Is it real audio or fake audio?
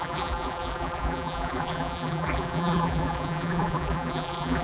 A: fake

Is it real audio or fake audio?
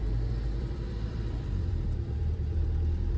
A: fake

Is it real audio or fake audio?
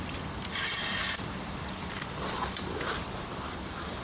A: fake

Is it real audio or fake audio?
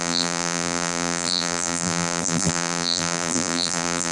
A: fake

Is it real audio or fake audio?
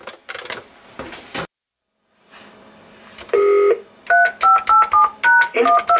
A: real